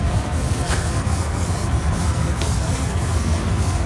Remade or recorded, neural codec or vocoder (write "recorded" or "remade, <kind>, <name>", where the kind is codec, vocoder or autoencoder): remade, codec, SNAC